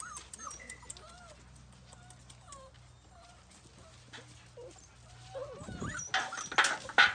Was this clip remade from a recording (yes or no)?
no